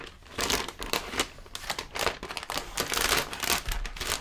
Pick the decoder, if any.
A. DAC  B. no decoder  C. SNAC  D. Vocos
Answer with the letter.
B